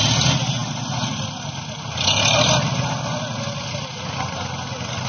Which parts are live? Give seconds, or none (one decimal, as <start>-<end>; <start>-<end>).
0.0-5.1

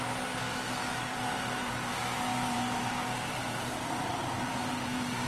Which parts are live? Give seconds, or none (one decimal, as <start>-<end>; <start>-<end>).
0.0-0.9; 1.9-2.3; 2.9-3.4

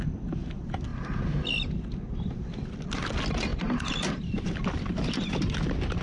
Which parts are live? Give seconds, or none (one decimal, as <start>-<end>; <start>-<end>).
0.0-3.5; 5.6-6.0

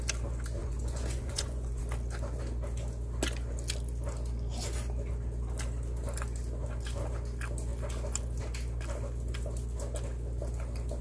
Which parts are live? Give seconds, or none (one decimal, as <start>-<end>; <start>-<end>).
0.0-0.6; 1.8-11.0